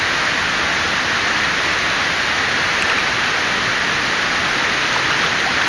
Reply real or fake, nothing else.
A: real